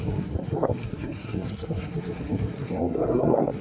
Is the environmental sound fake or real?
fake